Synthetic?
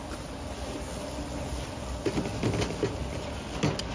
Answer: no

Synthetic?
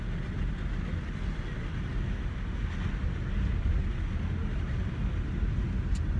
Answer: no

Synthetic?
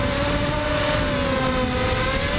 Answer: no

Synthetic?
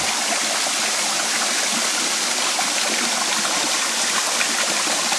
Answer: yes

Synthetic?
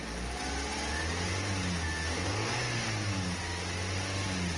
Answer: no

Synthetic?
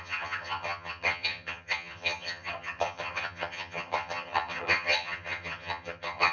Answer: yes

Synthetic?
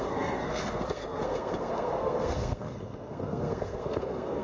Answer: yes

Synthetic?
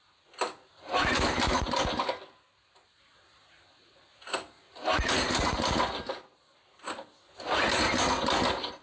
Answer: no